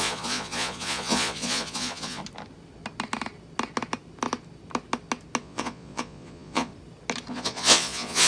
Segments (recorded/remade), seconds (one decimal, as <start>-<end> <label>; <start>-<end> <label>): 0.0-2.2 remade; 2.2-5.4 recorded; 5.4-6.7 remade; 6.7-7.3 recorded; 7.3-8.3 remade

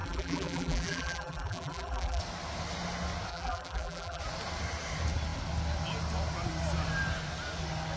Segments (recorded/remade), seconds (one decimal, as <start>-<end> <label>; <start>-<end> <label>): 0.0-2.2 remade; 2.2-3.3 recorded; 3.3-4.2 remade; 4.2-8.0 recorded